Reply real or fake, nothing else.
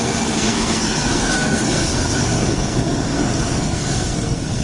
fake